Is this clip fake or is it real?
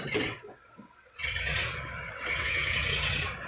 fake